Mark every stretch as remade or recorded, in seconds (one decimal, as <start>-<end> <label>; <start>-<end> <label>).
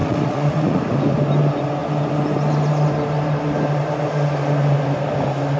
0.0-0.8 remade; 0.8-5.6 recorded